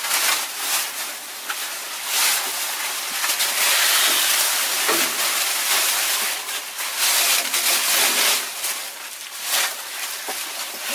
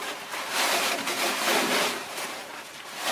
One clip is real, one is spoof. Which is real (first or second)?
first